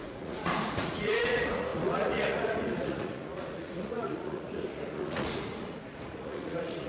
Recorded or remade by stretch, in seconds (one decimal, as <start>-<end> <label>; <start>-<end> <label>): 0.0-6.9 remade